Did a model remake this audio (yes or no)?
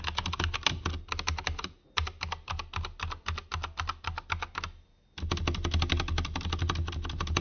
no